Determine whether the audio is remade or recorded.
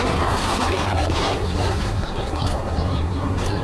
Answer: remade